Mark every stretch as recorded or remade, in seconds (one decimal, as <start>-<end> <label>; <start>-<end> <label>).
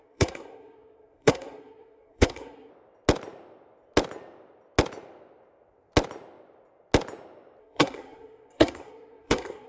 0.0-2.7 remade; 2.7-7.6 recorded; 7.6-9.7 remade